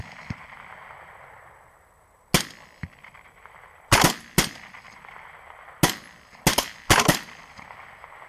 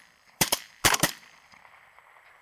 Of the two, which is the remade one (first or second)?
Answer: second